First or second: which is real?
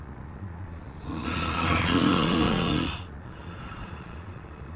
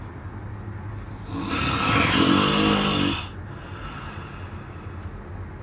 second